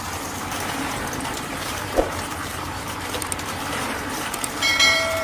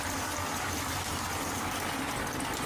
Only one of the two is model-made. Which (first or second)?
first